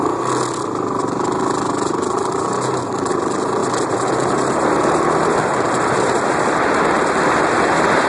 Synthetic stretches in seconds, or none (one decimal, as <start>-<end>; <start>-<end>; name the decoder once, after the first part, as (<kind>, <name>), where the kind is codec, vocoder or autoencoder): 3.6-7.6 (vocoder, BigVGAN v2)